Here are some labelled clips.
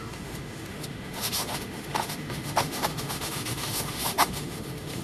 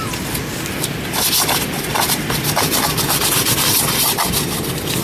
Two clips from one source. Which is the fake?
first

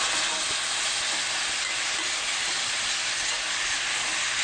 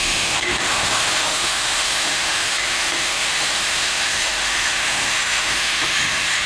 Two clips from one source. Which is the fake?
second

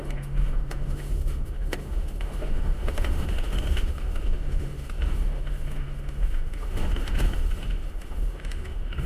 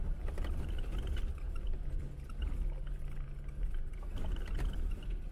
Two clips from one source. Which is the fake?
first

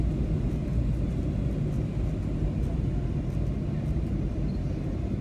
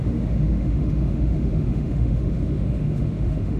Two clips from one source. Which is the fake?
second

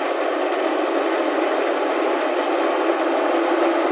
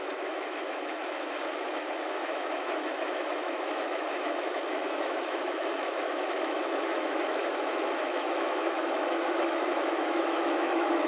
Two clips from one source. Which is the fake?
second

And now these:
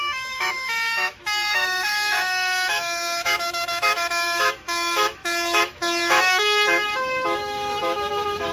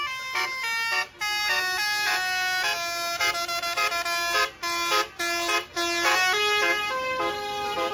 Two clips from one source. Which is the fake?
first